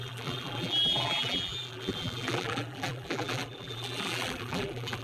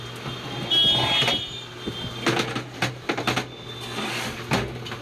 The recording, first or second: second